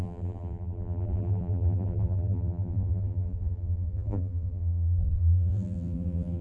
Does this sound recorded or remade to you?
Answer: remade